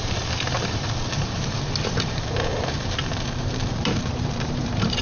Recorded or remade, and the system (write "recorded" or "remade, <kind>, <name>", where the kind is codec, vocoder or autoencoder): remade, vocoder, BigVGAN v2